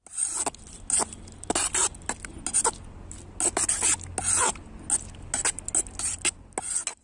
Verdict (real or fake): real